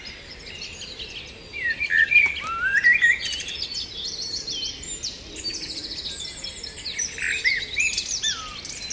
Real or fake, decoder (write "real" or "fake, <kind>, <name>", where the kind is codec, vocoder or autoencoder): real